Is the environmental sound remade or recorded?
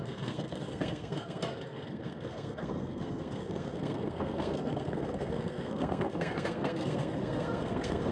remade